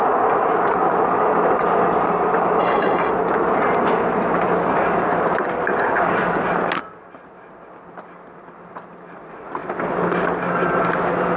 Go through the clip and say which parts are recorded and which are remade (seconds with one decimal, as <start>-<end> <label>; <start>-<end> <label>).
0.0-2.6 recorded; 2.6-3.1 remade; 3.1-11.4 recorded